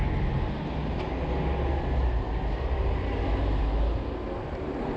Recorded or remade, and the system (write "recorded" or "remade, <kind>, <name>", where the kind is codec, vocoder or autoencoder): recorded